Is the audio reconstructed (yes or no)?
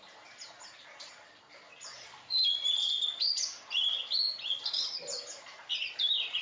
no